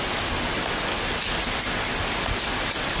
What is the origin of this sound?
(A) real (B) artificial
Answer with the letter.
A